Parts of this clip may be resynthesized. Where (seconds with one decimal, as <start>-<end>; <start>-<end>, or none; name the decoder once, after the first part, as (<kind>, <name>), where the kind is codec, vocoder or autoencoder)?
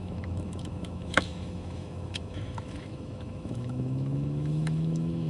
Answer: 0.0-5.3 (autoencoder, DAC-VAE)